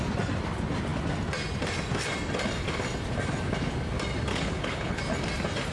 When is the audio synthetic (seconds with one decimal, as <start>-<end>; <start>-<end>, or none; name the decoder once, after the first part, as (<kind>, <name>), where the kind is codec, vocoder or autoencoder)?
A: 4.3-5.0 (codec, HILCodec)

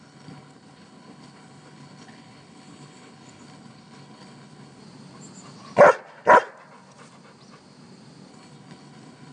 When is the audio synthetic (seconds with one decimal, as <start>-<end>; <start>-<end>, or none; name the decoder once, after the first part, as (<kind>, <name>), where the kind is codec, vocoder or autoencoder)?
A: 0.0-4.8 (codec, HILCodec); 8.3-9.3

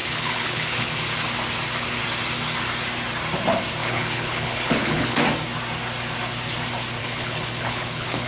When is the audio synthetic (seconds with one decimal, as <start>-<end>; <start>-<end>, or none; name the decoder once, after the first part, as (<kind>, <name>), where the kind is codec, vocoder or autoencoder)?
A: 0.0-1.0 (codec, HILCodec); 3.8-5.2; 7.0-8.3

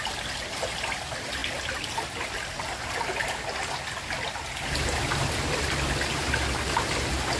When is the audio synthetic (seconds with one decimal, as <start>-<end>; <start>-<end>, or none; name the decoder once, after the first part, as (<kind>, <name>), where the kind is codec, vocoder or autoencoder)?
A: none

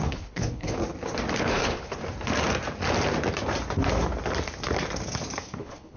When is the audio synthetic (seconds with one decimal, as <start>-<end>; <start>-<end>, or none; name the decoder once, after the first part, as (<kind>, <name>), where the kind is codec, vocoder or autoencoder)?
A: 0.0-0.8 (codec, HILCodec); 1.4-2.0; 5.6-6.0

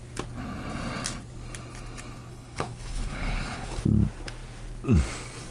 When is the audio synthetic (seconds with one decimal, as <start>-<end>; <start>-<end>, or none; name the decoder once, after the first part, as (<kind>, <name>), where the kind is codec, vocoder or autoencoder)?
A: 2.3-3.8 (codec, HILCodec)

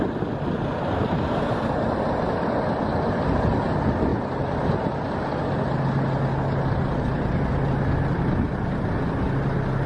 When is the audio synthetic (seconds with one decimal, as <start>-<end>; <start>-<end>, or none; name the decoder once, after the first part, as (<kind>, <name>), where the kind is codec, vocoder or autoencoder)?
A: none